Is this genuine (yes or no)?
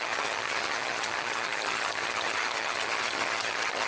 no